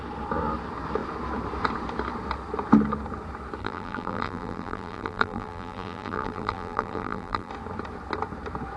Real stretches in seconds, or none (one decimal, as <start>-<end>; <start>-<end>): 0.0-3.6; 7.5-8.8